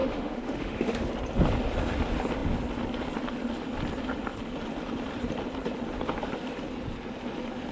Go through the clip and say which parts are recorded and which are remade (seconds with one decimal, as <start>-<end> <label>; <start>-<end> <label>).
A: 0.0-1.1 remade; 1.1-7.7 recorded